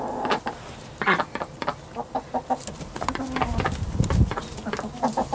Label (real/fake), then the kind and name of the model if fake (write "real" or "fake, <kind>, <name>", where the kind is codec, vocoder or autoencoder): real